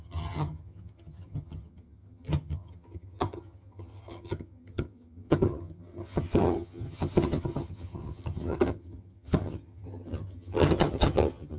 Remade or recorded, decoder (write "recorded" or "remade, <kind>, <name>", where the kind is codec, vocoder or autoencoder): remade, vocoder, HiFi-GAN